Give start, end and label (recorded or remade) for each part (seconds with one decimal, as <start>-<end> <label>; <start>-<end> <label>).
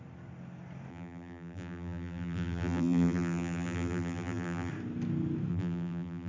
0.0-0.9 recorded; 0.9-4.7 remade; 4.7-5.5 recorded; 5.5-6.3 remade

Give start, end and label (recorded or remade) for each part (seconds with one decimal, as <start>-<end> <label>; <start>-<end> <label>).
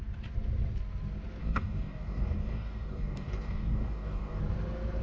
0.0-1.4 recorded; 1.4-4.4 remade; 4.4-5.0 recorded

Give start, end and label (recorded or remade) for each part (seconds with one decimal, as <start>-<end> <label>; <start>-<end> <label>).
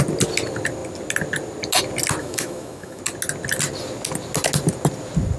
0.0-2.2 recorded; 2.2-3.0 remade; 3.0-5.4 recorded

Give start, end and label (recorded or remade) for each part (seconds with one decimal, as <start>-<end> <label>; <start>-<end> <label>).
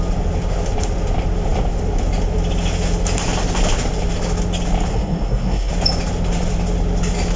0.0-4.9 recorded; 4.9-5.7 remade; 5.7-7.4 recorded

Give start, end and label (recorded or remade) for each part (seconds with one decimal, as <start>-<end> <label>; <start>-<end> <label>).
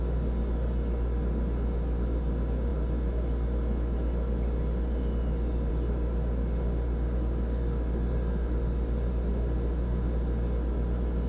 0.0-11.3 recorded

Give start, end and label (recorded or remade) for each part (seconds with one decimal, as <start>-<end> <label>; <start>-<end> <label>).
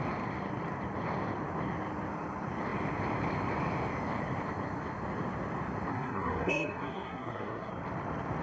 0.0-5.9 recorded; 5.9-7.7 remade; 7.7-8.4 recorded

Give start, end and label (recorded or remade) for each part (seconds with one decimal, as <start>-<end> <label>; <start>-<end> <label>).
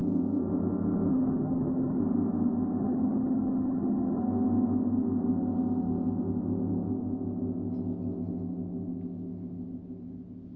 0.0-1.1 recorded; 1.1-2.0 remade; 2.0-2.8 recorded; 2.8-4.2 remade; 4.2-10.6 recorded